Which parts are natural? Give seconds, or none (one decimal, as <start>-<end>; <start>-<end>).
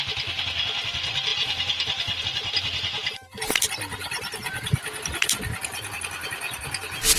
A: 0.0-3.0; 3.6-4.0; 4.8-7.2